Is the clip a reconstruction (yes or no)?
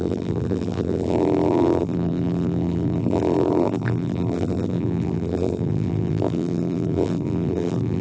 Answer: yes